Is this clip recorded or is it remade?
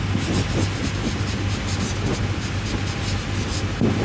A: recorded